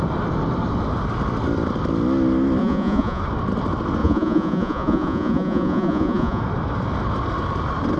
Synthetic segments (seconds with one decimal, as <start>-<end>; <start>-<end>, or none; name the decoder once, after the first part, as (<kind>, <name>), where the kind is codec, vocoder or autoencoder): 2.6-3.2 (vocoder, Vocos); 4.0-6.4